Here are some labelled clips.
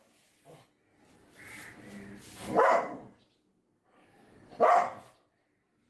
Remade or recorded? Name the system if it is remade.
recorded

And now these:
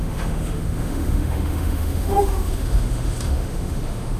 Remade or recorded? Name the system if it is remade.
remade, autoencoder, DAC-VAE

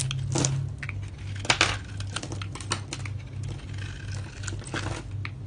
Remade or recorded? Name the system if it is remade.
recorded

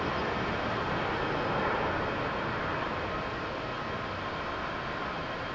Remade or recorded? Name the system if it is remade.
recorded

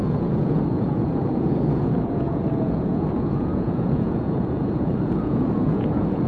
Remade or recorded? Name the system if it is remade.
remade, vocoder, Vocos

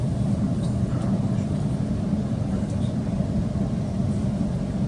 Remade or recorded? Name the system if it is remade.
recorded